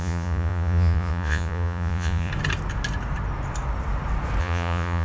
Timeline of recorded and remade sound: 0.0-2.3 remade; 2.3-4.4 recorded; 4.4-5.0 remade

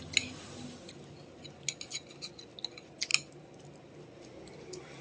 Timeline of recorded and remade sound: 0.0-5.0 recorded

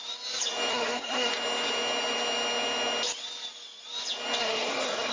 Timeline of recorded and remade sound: 0.0-0.7 recorded; 0.7-1.3 remade; 1.3-4.4 recorded; 4.4-5.1 remade

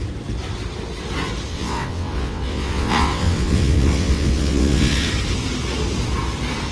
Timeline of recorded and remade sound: 0.0-1.5 recorded; 1.5-5.1 remade; 5.1-6.7 recorded

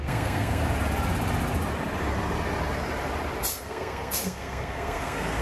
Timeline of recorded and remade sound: 0.0-0.6 remade; 0.6-3.5 recorded; 3.5-5.4 remade